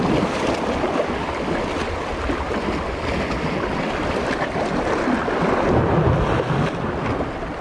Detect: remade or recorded recorded